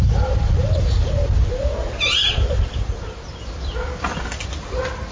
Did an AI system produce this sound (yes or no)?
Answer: no